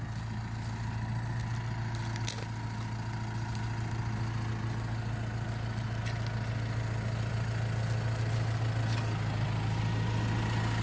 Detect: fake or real real